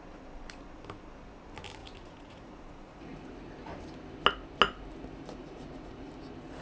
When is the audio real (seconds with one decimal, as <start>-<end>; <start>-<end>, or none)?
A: 0.0-1.8; 3.3-5.4; 6.1-6.6